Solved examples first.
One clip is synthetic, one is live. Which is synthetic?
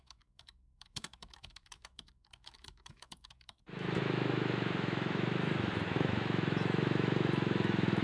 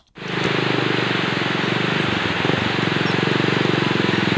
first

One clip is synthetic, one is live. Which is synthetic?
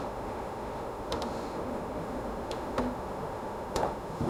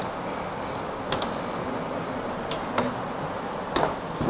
first